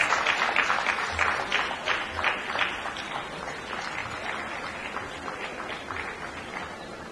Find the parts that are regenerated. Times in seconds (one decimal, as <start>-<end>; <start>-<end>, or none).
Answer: 0.0-0.7; 1.5-3.6; 4.0-6.5